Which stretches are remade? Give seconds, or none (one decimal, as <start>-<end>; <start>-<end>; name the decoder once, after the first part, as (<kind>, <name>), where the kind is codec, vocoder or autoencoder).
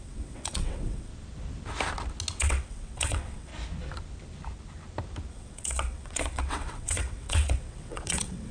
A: 0.0-1.1 (vocoder, WaveNeXt); 2.4-3.5; 5.3-8.5